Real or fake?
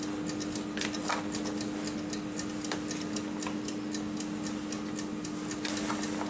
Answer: real